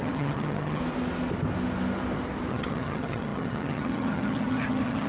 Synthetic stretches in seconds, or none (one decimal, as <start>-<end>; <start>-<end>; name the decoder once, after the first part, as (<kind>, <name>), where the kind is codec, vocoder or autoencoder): 0.0-0.8 (vocoder, HiFi-GAN); 2.5-5.1